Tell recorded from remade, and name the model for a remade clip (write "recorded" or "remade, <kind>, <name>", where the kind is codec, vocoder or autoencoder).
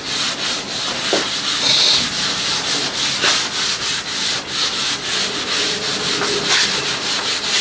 recorded